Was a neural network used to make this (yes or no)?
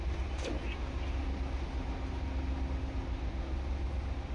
no